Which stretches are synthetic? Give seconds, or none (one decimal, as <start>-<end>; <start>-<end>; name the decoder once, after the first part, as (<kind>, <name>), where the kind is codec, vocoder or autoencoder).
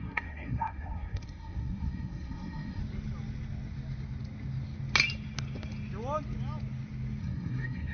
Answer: 0.0-2.8 (codec, SNAC); 7.2-7.9